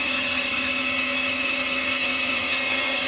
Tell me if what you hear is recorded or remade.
remade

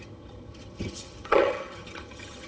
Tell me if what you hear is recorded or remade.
remade